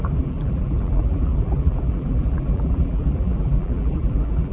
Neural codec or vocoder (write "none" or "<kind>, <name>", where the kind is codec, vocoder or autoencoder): vocoder, BigVGAN v2